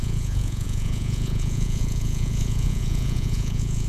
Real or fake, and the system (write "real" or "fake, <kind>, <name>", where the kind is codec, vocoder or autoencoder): fake, vocoder, Vocos